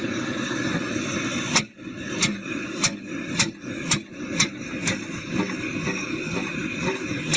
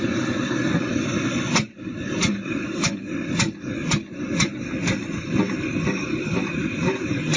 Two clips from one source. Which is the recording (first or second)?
first